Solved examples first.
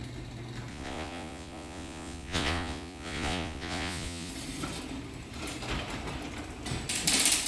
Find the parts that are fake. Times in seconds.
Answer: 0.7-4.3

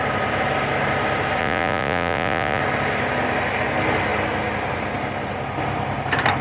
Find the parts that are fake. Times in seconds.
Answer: 1.4-2.6